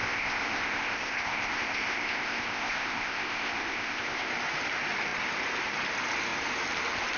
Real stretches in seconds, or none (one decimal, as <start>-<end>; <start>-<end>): 4.3-7.2